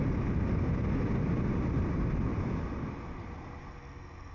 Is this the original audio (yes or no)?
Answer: yes